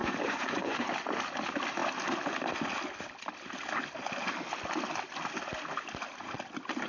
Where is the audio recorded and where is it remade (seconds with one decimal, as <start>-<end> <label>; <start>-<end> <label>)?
0.0-0.9 remade; 0.9-6.9 recorded